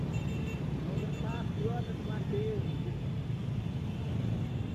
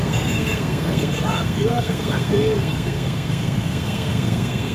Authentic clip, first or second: first